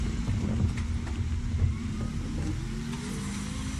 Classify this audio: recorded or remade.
recorded